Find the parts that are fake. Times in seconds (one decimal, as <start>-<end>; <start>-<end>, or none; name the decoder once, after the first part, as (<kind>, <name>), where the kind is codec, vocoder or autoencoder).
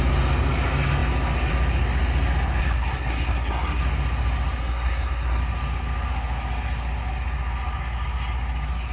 2.6-3.8 (codec, SNAC); 4.6-5.4